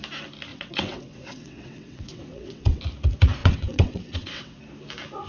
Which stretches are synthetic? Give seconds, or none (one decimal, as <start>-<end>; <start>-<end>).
0.5-2.8; 3.4-4.6